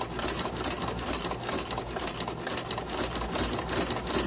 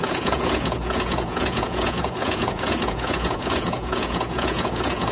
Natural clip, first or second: first